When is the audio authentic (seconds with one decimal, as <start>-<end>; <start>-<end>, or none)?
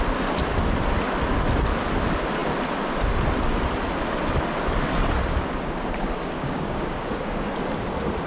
0.0-6.2; 7.5-8.3